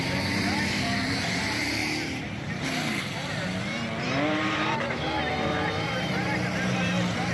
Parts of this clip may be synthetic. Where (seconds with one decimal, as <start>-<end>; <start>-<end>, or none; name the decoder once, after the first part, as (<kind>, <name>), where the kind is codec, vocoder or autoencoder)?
0.0-1.8 (vocoder, BigVGAN v2); 4.0-7.3